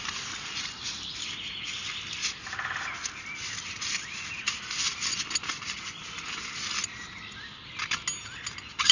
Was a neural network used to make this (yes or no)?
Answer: no